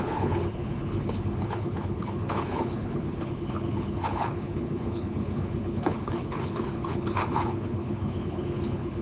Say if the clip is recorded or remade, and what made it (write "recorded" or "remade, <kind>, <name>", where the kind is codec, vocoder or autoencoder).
remade, codec, HILCodec